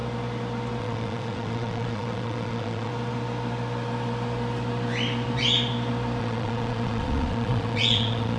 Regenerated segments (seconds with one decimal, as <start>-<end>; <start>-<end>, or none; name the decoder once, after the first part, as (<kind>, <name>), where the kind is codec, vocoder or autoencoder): 0.8-2.9 (vocoder, Vocos); 6.2-8.4